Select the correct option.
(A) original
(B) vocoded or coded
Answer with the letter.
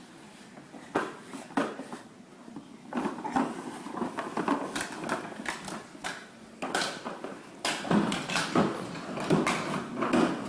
A